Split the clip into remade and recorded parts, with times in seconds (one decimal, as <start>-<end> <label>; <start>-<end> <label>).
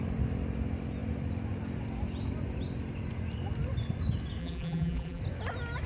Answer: 0.0-4.4 recorded; 4.4-5.2 remade; 5.2-5.9 recorded